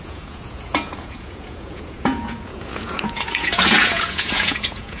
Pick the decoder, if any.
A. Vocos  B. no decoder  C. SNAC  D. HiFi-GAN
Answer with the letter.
A